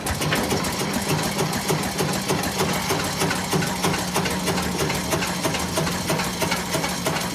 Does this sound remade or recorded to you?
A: recorded